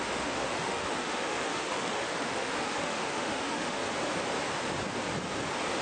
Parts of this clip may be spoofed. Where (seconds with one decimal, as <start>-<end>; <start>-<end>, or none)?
0.0-3.8